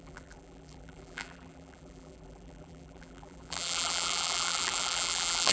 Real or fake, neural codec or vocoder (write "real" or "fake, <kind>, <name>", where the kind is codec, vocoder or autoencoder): fake, vocoder, BigVGAN v2